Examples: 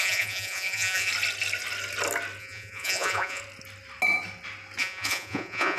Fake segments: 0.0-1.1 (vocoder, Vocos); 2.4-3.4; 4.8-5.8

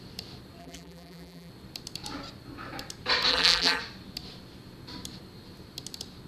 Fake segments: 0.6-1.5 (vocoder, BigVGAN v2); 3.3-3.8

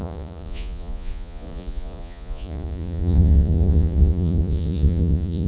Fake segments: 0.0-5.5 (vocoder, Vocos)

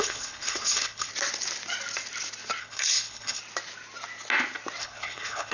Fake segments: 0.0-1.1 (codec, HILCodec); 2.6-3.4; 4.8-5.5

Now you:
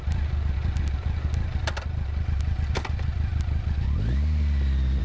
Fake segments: none